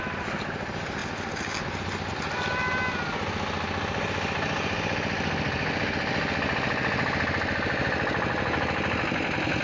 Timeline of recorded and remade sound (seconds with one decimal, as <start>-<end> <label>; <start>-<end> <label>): 0.0-9.6 recorded